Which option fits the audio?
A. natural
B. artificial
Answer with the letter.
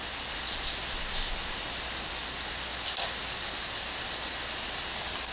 A